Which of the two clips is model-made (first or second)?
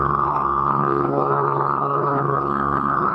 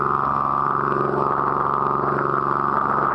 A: first